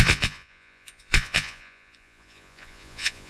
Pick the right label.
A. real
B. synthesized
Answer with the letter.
B